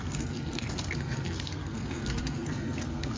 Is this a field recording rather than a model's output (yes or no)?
no